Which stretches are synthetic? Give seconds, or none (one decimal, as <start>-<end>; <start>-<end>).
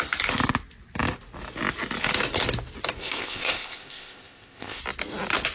3.0-4.8